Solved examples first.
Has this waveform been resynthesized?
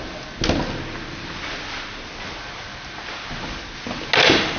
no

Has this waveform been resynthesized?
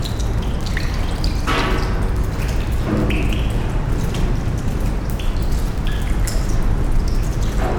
no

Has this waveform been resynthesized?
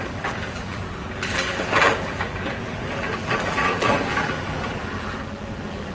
yes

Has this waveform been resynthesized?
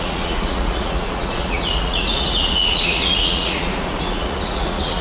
yes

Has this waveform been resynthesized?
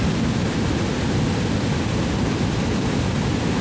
no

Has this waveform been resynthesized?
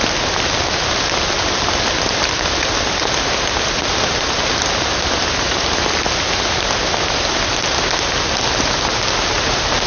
no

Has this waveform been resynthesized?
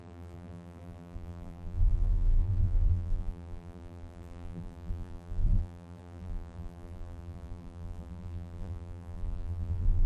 yes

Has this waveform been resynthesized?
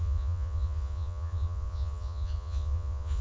yes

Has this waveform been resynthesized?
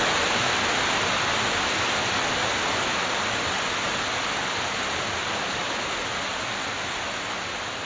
no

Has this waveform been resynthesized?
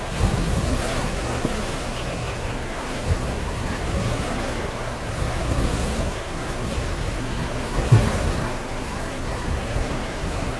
yes